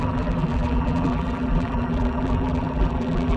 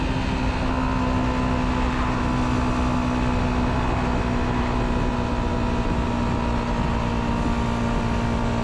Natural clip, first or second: second